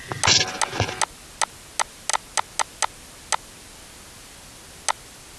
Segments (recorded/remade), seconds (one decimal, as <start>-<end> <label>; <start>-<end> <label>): 0.0-5.4 recorded